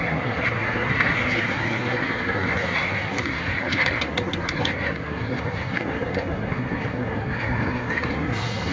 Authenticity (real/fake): fake